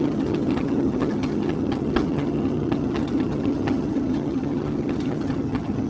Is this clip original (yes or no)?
no